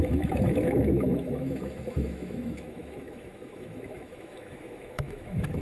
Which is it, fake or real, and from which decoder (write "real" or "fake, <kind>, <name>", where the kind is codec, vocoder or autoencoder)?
fake, autoencoder, DAC-VAE